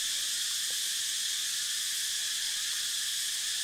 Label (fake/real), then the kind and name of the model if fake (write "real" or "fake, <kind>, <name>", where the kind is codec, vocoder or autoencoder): real